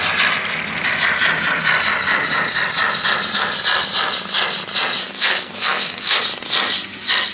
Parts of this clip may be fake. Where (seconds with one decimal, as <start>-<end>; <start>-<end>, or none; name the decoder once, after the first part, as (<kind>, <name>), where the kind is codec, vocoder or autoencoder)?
5.0-6.2 (codec, SNAC)